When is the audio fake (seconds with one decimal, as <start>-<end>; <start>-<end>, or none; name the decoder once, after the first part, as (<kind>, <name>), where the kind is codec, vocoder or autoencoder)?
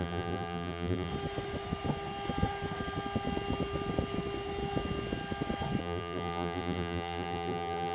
0.0-1.1 (vocoder, BigVGAN v2); 5.8-7.9